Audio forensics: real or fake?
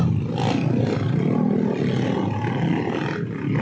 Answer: real